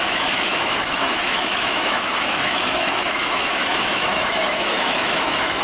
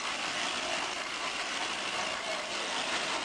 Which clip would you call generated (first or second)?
first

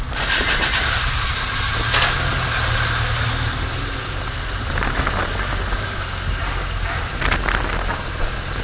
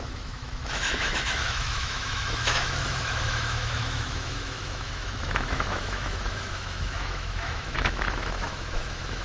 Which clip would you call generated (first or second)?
second